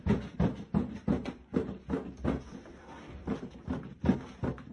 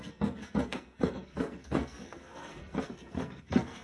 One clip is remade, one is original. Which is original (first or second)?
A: first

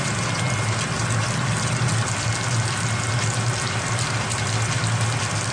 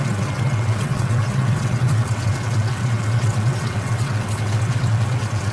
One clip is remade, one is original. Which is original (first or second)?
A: first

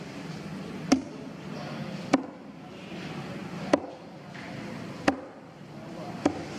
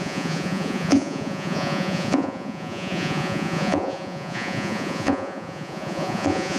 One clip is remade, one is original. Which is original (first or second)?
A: first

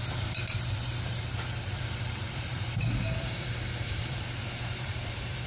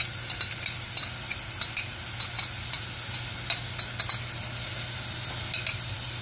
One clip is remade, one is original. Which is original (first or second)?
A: second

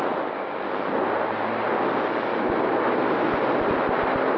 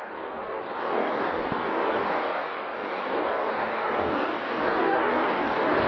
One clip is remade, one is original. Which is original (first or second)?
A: first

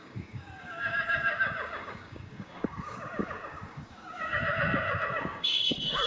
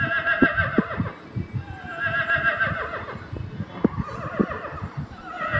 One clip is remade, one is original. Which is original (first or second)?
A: second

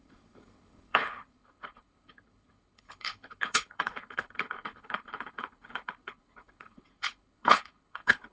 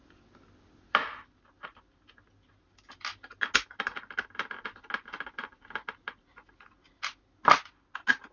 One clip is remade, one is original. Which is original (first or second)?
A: second